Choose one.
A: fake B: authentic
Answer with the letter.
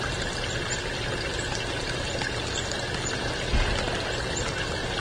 B